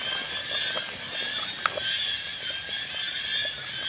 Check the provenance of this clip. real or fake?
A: real